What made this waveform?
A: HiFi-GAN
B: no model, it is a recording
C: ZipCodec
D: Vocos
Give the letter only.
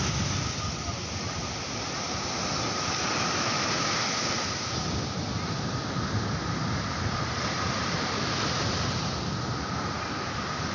B